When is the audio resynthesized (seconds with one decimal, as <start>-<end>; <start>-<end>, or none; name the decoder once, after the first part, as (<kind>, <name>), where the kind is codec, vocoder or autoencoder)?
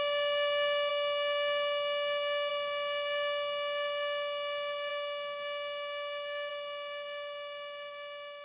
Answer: 0.9-2.5 (autoencoder, DAC-VAE); 4.9-6.5